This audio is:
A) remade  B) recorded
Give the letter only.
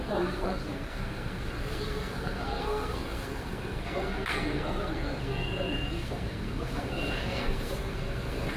A